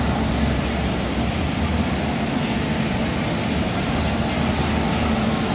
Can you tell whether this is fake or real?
real